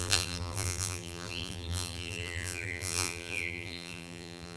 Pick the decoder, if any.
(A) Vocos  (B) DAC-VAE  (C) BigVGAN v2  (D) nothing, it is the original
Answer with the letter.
C